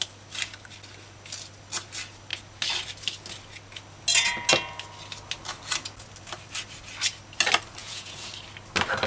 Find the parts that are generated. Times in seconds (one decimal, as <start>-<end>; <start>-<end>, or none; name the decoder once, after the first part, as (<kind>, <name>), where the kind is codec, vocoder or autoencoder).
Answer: 7.8-8.3 (vocoder, Vocos)